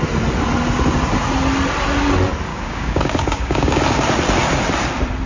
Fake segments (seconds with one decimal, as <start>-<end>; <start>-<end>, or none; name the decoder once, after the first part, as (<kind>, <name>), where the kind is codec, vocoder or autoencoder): 2.5-3.8 (codec, DAC)